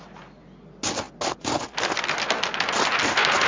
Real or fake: real